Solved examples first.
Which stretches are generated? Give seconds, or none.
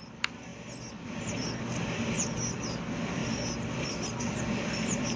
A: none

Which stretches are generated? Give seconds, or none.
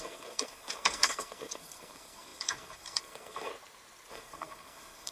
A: 0.0-3.5 (codec, SNAC); 4.1-5.1